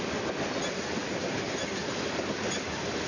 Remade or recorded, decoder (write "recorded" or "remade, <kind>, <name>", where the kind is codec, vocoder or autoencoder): recorded